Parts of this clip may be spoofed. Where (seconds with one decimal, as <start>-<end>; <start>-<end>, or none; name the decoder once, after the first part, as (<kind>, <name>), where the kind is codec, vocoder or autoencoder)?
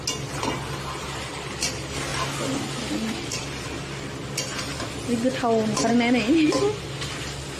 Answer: none